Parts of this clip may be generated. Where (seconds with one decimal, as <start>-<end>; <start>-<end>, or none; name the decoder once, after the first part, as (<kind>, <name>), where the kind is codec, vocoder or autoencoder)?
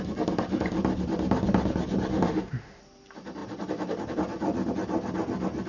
2.1-2.8 (autoencoder, DAC-VAE)